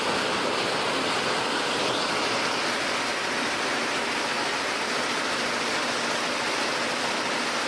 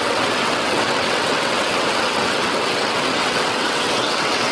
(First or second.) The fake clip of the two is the second